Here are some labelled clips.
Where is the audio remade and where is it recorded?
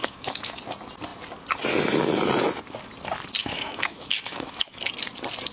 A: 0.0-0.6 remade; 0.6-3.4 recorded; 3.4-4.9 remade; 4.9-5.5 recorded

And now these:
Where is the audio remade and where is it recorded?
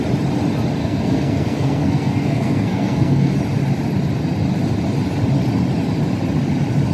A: 0.0-0.8 recorded; 0.8-3.3 remade; 3.3-6.9 recorded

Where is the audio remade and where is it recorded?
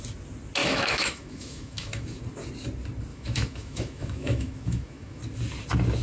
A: 0.0-0.6 recorded; 0.6-2.2 remade; 2.2-3.1 recorded; 3.1-5.2 remade; 5.2-6.0 recorded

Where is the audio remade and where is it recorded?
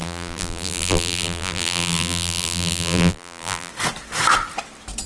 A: 0.0-3.7 remade; 3.7-5.1 recorded